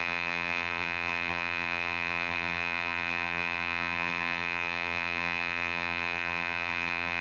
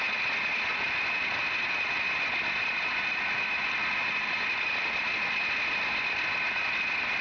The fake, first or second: first